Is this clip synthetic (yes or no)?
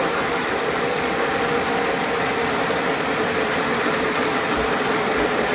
yes